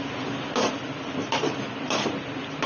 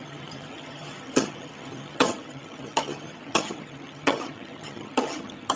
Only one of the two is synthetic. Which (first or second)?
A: second